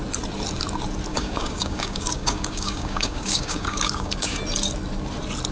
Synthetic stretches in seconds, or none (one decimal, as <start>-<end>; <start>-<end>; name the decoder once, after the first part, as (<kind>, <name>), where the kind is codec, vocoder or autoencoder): 1.1-4.4 (codec, DAC)